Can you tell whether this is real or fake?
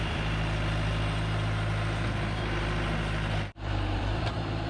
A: fake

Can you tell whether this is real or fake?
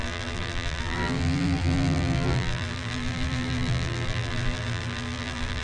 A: fake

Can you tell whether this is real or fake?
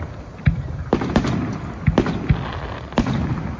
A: real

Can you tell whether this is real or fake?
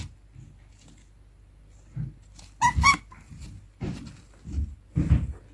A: real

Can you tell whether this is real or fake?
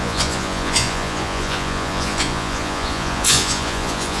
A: fake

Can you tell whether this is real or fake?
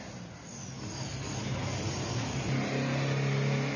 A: real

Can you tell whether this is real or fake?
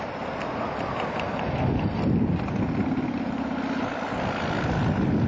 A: real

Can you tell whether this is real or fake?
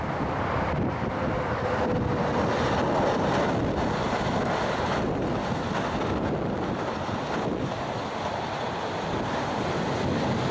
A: real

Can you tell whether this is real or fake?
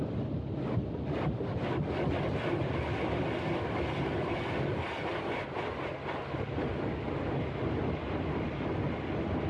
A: real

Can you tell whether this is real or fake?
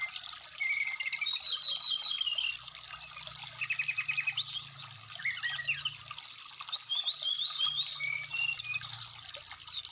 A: real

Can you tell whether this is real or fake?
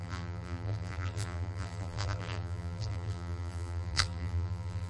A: fake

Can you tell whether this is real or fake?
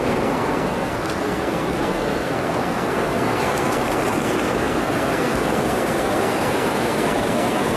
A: fake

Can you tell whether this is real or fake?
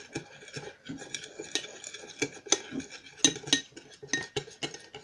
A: real